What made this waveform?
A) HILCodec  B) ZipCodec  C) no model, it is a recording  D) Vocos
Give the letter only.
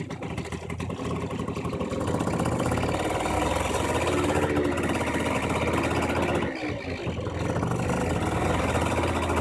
C